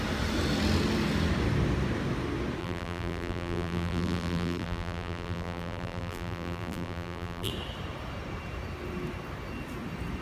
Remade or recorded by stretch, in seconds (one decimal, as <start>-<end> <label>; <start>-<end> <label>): 0.0-2.6 recorded; 2.6-7.5 remade; 7.5-10.2 recorded